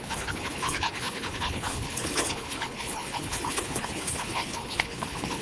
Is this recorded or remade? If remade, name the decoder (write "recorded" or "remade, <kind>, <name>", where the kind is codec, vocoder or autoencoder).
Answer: remade, codec, HILCodec